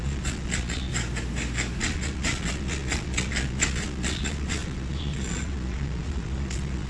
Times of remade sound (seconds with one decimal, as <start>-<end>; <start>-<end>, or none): 0.0-0.9; 1.8-6.9